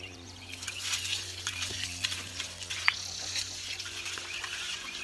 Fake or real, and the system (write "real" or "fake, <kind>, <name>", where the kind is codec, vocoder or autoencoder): fake, vocoder, Vocos